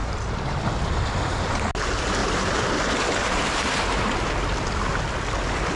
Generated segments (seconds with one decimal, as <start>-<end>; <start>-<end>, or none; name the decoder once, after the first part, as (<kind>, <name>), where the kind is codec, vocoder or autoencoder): 0.0-0.6 (vocoder, BigVGAN v2); 2.2-4.0